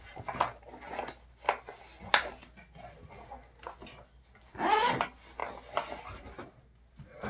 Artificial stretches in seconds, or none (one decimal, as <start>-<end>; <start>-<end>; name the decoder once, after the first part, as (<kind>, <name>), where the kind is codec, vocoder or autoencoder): none